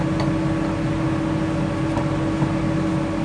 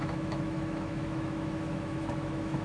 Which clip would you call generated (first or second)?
second